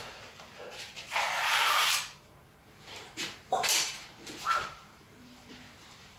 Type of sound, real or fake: fake